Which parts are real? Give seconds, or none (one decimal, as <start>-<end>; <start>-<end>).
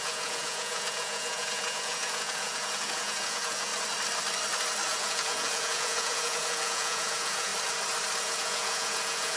3.7-4.9; 7.5-8.2